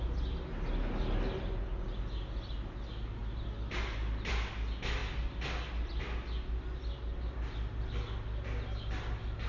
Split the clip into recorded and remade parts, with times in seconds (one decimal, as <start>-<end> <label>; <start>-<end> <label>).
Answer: 0.0-9.5 recorded